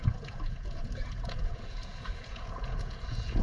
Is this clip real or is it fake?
fake